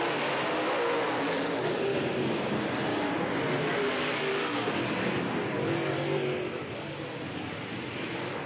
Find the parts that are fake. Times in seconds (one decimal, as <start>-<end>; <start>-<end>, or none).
1.9-2.5; 2.9-3.4